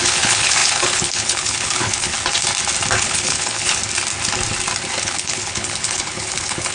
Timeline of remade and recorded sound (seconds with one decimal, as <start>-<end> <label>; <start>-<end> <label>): 0.0-2.1 remade; 2.1-3.0 recorded; 3.0-3.8 remade; 3.8-5.0 recorded; 5.0-6.7 remade

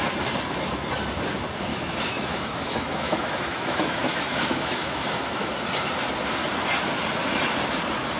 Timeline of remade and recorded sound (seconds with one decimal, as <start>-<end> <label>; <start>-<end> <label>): 0.0-1.7 recorded; 1.7-5.5 remade; 5.5-8.2 recorded

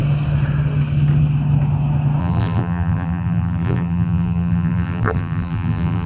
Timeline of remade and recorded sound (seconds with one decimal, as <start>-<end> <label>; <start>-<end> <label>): 0.0-2.2 recorded; 2.2-6.1 remade

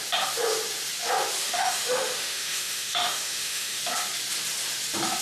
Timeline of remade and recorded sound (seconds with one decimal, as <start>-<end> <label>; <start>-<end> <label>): 0.0-1.4 recorded; 1.4-3.8 remade; 3.8-5.2 recorded

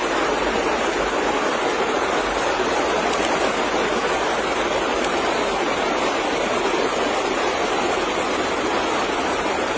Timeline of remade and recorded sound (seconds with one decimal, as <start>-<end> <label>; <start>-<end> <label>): 0.0-9.8 recorded

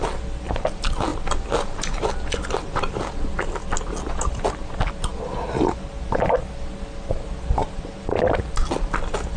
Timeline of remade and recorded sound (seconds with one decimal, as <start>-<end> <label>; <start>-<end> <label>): 0.0-9.4 recorded